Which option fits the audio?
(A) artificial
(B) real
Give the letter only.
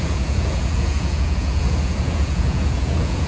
A